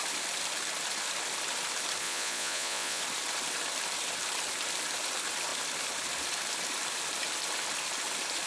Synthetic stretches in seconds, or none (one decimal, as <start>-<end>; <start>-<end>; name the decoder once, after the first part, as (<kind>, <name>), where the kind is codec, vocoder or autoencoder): 2.0-3.0 (vocoder, Vocos)